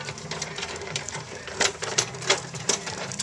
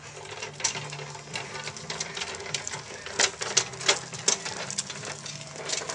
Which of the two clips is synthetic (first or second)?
first